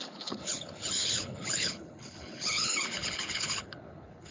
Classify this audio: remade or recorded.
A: remade